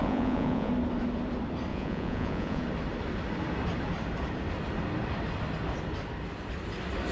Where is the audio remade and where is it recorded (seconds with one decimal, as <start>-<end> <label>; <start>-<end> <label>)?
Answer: 0.0-0.7 remade; 0.7-1.7 recorded; 1.7-2.6 remade; 2.6-7.1 recorded